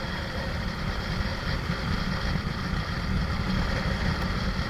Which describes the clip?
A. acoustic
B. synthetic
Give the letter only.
B